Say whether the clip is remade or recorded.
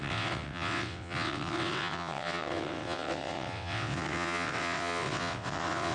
remade